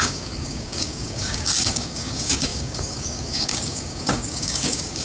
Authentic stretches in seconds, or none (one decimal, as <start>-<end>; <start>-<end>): none